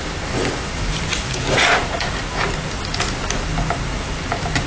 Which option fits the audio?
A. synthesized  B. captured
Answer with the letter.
B